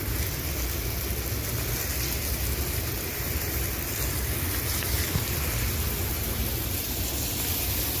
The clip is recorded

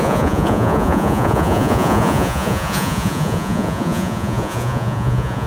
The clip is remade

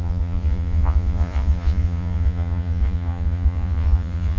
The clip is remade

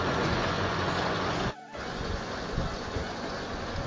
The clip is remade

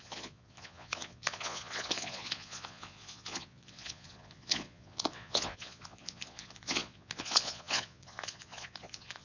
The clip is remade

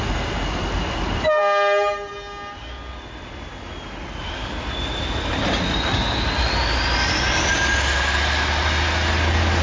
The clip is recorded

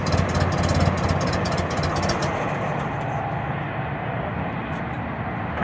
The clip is recorded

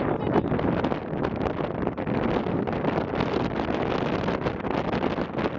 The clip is recorded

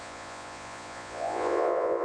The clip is remade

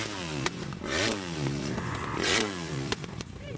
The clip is remade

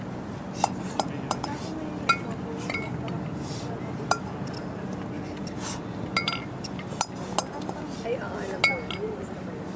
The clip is recorded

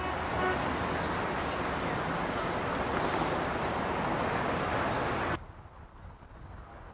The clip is recorded